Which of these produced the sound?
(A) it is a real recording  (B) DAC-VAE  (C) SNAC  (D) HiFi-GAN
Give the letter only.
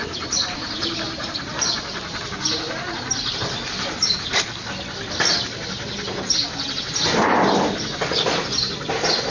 A